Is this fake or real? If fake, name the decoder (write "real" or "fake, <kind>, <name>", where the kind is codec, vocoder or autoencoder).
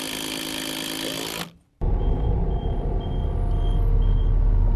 real